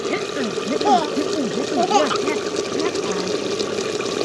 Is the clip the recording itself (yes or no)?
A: yes